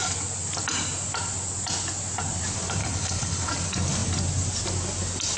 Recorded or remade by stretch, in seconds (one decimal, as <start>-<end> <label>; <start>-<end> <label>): 0.0-2.8 recorded; 2.8-3.5 remade; 3.5-5.4 recorded